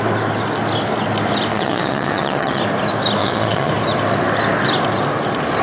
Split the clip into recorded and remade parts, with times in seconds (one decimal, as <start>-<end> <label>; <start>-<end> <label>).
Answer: 0.0-1.5 recorded; 1.5-2.6 remade; 2.6-3.2 recorded; 3.2-3.7 remade; 3.7-5.6 recorded